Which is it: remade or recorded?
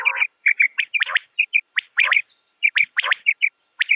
remade